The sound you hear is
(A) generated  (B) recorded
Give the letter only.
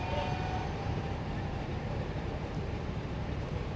A